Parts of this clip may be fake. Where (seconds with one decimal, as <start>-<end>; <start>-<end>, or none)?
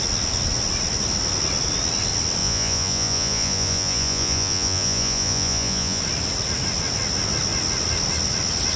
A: 2.4-6.0